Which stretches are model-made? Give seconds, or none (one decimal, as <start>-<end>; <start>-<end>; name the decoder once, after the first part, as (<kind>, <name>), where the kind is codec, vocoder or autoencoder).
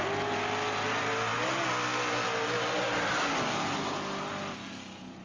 none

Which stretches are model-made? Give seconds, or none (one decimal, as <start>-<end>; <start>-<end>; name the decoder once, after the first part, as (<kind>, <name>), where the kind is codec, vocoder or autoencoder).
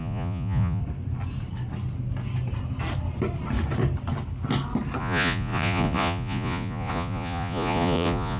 0.0-0.8 (vocoder, Vocos); 5.0-8.4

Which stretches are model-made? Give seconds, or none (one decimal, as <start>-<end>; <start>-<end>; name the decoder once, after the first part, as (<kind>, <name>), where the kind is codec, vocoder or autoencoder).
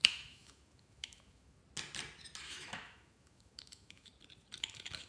0.0-1.6 (autoencoder, DAC-VAE); 2.4-4.1; 4.6-5.1